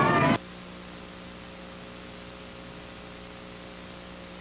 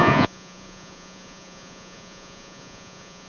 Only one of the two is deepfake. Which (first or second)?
second